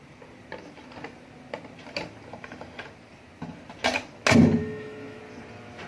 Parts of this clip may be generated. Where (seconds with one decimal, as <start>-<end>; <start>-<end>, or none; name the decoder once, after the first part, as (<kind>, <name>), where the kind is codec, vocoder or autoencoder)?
4.6-5.2 (autoencoder, DAC-VAE)